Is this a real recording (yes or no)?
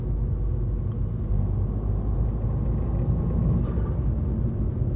yes